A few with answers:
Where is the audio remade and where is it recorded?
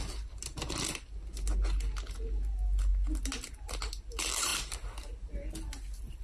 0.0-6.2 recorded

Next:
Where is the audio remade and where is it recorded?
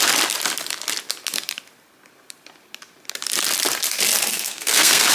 0.0-4.3 recorded; 4.3-5.1 remade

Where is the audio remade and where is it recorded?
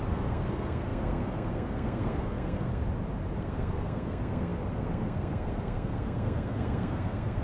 0.0-2.8 remade; 2.8-3.4 recorded; 3.4-7.4 remade